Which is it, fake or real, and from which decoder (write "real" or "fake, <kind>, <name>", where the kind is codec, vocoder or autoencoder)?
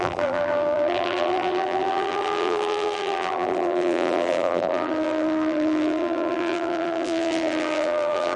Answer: fake, vocoder, BigVGAN v2